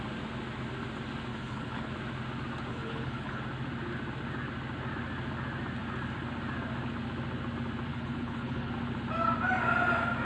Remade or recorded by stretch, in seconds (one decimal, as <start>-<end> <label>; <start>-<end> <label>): 0.0-1.3 recorded; 1.3-1.9 remade; 1.9-2.7 recorded; 2.7-3.4 remade; 3.4-7.9 recorded; 7.9-8.7 remade; 8.7-10.2 recorded